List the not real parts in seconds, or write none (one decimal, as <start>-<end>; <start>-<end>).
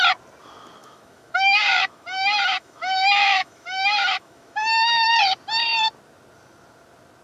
0.8-5.1